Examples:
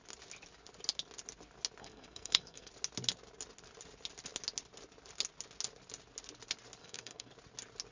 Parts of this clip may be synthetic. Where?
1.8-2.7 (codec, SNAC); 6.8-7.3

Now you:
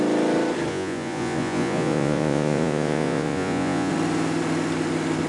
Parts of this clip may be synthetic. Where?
0.7-3.9 (vocoder, Vocos)

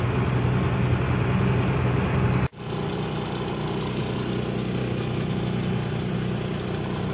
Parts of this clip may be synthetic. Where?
4.8-5.4 (autoencoder, DAC-VAE)

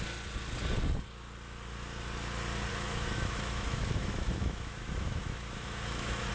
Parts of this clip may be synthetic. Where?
2.7-6.3 (autoencoder, DAC-VAE)

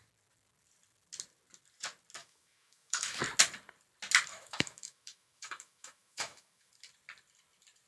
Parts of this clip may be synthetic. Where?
2.2-3.2 (autoencoder, DAC-VAE); 4.3-6.7